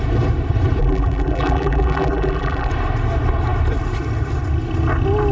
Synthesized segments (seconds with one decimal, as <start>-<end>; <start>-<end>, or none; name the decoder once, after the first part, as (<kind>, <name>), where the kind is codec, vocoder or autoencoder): 0.8-2.7 (vocoder, BigVGAN v2)